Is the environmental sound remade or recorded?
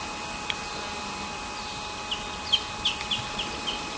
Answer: recorded